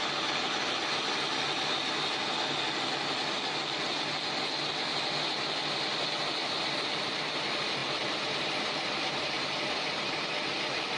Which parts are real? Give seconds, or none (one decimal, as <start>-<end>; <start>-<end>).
0.0-7.8; 10.3-11.0

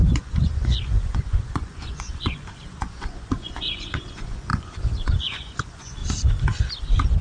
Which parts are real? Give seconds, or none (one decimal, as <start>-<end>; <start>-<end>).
6.0-7.2

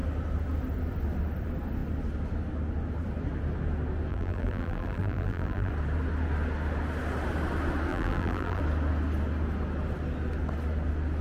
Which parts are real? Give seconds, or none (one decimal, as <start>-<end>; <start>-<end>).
0.0-4.1; 5.7-7.9; 8.6-11.2

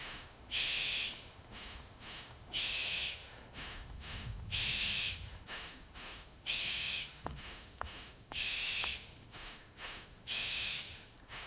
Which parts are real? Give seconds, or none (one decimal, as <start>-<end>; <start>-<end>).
none

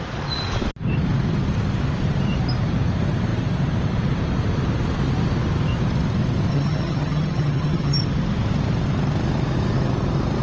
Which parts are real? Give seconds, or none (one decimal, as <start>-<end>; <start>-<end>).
0.0-6.5; 8.0-10.4

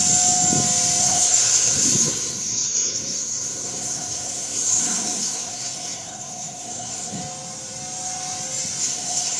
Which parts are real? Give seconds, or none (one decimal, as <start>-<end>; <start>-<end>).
0.0-1.0; 7.2-8.8

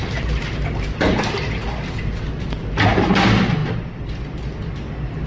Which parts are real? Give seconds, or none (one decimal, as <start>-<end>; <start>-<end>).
0.0-5.3

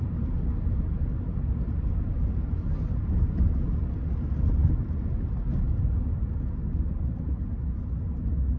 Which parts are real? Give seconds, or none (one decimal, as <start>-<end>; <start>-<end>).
0.0-8.6